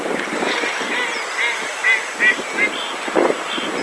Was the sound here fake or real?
real